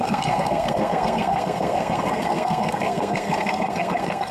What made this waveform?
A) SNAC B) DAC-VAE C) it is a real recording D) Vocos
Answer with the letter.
A